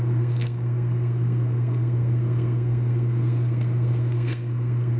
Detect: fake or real fake